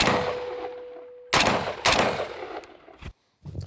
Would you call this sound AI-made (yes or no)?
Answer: no